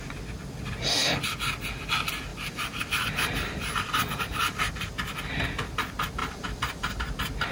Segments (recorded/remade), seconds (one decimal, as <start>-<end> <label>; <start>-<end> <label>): 0.0-2.3 recorded; 2.3-4.7 remade; 4.7-6.2 recorded; 6.2-7.0 remade; 7.0-7.5 recorded